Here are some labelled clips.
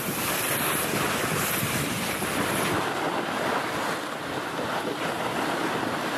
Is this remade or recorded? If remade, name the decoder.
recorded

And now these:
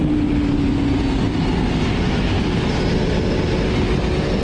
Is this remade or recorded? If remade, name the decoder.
recorded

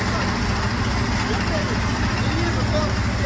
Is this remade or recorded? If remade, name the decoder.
recorded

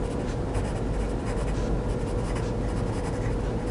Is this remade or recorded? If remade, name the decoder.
recorded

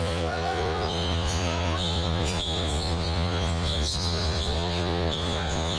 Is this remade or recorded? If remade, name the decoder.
remade, vocoder, Vocos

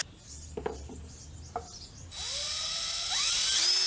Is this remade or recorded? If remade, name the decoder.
recorded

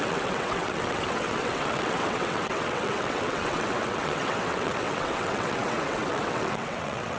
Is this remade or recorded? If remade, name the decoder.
remade, vocoder, WaveNeXt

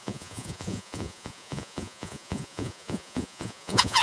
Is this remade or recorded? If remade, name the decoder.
remade, vocoder, Vocos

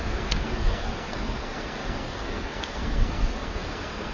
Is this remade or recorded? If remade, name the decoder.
remade, codec, SNAC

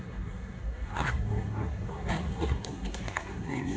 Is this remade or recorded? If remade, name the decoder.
remade, codec, SNAC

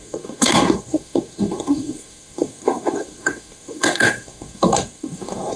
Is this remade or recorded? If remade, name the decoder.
remade, codec, SNAC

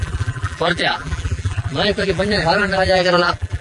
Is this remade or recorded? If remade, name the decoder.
remade, vocoder, BigVGAN v2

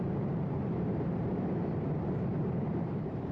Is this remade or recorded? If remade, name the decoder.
remade, vocoder, BigVGAN v2